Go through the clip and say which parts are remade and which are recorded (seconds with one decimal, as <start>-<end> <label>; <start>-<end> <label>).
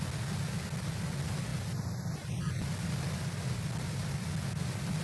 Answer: 0.0-5.0 recorded